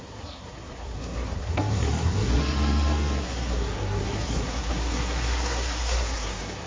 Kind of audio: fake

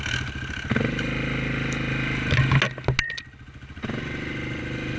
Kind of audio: real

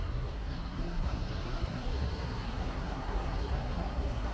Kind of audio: fake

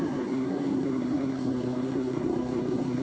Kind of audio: fake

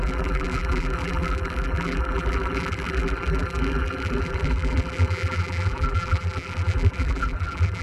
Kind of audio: fake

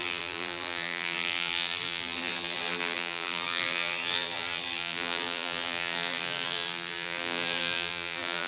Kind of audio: fake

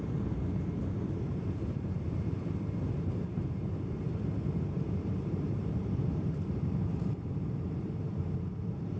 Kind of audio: fake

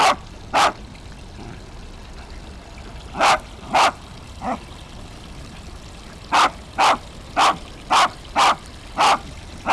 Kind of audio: real